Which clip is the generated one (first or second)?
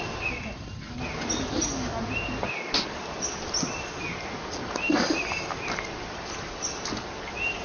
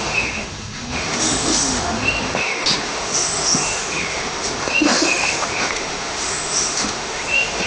second